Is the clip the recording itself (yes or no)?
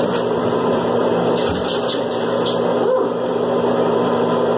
no